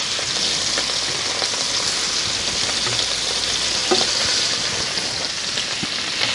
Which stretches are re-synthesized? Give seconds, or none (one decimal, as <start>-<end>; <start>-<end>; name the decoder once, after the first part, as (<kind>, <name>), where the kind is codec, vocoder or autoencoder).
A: none

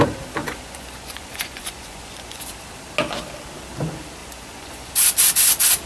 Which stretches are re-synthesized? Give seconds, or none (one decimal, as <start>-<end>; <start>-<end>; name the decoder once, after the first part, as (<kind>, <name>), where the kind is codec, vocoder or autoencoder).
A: 0.4-2.5 (vocoder, Vocos); 4.2-4.9

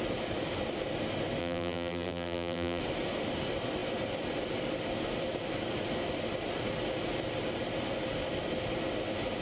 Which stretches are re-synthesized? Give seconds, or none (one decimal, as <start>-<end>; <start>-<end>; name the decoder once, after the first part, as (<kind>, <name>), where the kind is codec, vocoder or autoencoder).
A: 1.4-2.8 (vocoder, BigVGAN v2)